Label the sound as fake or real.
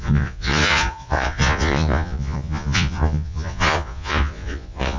fake